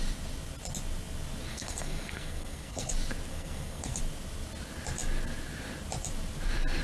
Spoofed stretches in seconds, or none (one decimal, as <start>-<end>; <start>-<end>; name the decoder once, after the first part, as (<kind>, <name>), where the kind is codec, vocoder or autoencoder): 1.5-2.9 (codec, SNAC); 3.3-4.0